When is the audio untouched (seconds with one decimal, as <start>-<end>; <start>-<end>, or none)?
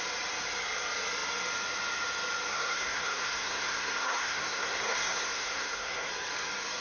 0.0-2.5; 6.1-6.8